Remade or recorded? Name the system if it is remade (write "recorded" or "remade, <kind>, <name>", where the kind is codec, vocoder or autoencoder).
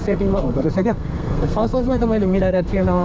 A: remade, codec, SNAC